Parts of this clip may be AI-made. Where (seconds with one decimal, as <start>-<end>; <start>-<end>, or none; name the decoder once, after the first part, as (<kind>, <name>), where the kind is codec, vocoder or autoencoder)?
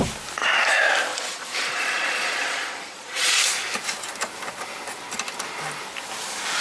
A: 1.1-3.4 (vocoder, Vocos)